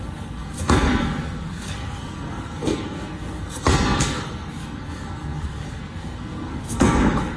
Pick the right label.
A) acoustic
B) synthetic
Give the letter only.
B